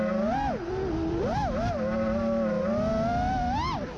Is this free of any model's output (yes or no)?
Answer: yes